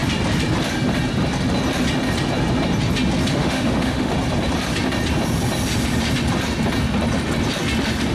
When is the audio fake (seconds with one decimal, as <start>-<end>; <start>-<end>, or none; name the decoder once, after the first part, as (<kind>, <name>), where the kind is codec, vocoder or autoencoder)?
3.3-4.1 (autoencoder, DAC-VAE)